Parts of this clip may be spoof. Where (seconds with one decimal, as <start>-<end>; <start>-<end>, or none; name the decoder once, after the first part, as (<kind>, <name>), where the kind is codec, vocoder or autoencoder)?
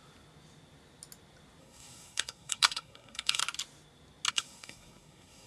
1.6-3.4 (codec, SNAC); 4.3-5.5